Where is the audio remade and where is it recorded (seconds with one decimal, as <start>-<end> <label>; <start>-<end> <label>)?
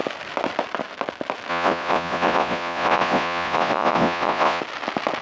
0.0-1.5 recorded; 1.5-4.6 remade; 4.6-5.2 recorded